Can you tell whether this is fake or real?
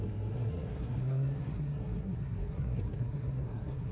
fake